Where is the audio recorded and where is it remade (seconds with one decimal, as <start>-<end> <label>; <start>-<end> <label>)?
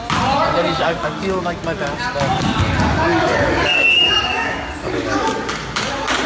0.0-0.6 recorded; 0.6-1.6 remade; 1.6-3.1 recorded; 3.1-5.3 remade; 5.3-6.3 recorded